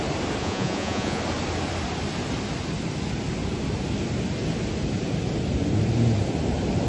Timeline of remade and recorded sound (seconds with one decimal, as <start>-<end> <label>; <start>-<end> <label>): 0.0-0.4 recorded; 0.4-1.2 remade; 1.2-6.9 recorded